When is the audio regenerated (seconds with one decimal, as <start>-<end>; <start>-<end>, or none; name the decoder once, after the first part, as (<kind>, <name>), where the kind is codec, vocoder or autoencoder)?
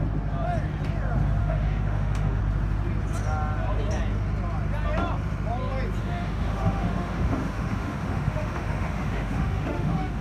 1.4-2.4 (autoencoder, DAC-VAE); 6.0-10.2